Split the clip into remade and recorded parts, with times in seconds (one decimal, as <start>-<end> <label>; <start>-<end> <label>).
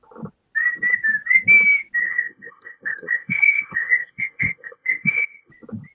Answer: 0.0-2.0 recorded; 2.0-5.5 remade; 5.5-5.9 recorded